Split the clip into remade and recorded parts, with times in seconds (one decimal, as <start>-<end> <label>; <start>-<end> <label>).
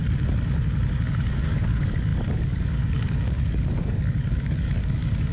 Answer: 0.0-1.2 recorded; 1.2-5.3 remade